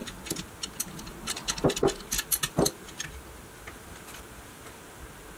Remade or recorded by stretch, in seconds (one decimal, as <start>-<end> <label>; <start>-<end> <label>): 0.0-5.4 recorded